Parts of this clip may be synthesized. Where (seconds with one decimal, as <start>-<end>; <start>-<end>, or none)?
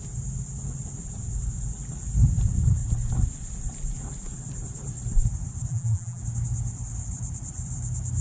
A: 5.7-6.2